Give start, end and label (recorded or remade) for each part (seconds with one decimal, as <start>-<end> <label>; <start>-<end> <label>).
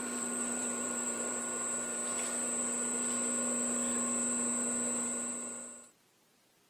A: 0.0-1.4 remade; 1.4-6.7 recorded